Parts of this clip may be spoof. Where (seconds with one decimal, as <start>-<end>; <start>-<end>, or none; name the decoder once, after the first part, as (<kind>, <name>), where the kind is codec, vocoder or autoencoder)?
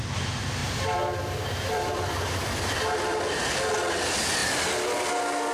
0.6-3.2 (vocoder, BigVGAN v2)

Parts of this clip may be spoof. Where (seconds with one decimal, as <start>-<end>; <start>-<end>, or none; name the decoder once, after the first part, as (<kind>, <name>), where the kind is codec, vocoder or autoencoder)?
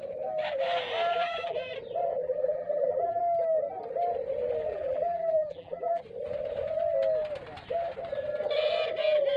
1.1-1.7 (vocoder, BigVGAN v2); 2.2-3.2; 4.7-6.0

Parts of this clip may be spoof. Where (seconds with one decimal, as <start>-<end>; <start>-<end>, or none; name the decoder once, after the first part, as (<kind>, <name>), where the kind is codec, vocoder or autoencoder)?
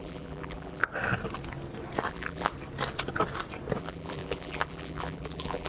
0.0-0.8 (vocoder, BigVGAN v2); 2.1-2.5; 3.8-5.7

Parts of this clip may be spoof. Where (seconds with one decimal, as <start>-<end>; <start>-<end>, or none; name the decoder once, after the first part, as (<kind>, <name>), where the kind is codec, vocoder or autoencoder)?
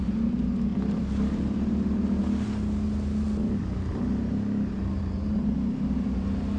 none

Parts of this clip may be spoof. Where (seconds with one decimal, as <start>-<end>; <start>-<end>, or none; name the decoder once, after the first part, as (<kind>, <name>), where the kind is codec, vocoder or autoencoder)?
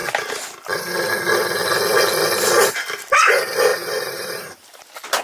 3.7-4.5 (vocoder, BigVGAN v2)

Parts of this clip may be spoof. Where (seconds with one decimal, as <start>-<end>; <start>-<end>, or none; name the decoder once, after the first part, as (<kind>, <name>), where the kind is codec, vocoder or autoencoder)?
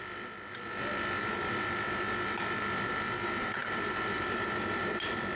3.6-4.8 (vocoder, BigVGAN v2)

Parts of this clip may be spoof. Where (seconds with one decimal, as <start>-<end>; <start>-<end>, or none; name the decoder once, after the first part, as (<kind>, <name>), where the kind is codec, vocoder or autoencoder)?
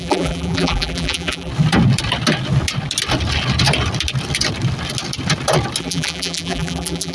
0.0-1.5 (vocoder, BigVGAN v2); 5.8-7.1